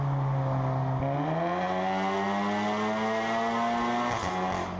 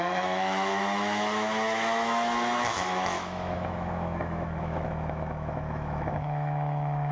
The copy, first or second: second